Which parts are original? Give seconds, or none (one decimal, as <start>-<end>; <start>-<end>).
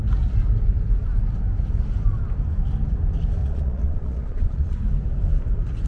0.0-3.4; 4.8-5.9